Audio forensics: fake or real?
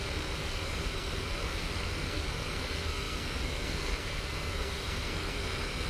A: fake